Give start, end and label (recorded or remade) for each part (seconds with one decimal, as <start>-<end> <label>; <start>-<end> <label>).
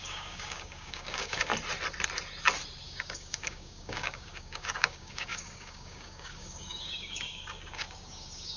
0.0-1.5 remade; 1.5-2.8 recorded; 2.8-8.6 remade